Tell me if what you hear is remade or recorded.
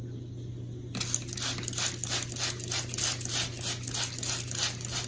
recorded